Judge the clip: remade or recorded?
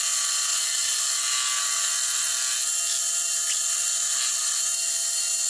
recorded